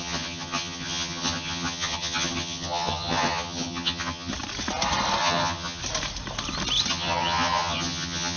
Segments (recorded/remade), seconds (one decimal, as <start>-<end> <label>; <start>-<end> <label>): 0.0-4.3 remade; 4.3-5.2 recorded; 5.2-5.8 remade; 5.8-6.9 recorded; 6.9-8.4 remade